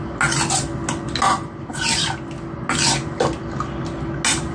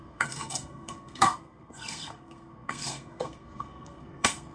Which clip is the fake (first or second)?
second